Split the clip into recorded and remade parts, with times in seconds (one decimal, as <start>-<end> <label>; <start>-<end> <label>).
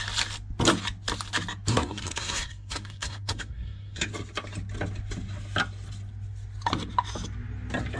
0.0-1.7 recorded; 1.7-4.1 remade; 4.1-8.0 recorded